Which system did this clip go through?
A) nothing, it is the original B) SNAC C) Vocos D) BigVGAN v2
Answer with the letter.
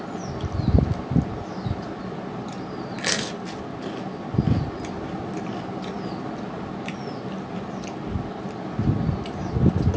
A